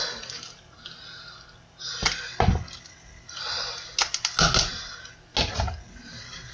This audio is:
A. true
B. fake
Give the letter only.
A